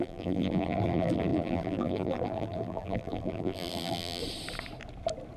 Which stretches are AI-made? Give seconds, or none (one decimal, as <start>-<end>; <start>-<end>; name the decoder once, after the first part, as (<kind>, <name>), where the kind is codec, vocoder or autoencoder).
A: 0.0-4.2 (vocoder, BigVGAN v2)